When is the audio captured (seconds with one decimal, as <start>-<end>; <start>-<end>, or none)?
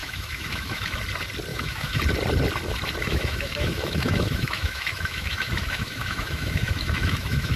1.0-1.5; 2.0-3.0